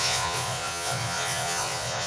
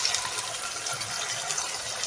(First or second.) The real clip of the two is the second